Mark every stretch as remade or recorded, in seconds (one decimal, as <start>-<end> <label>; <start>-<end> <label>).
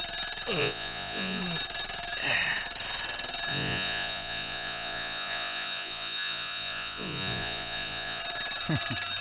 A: 0.0-0.6 recorded; 0.6-1.4 remade; 1.4-3.5 recorded; 3.5-8.2 remade; 8.2-9.2 recorded